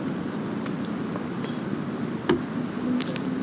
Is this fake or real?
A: real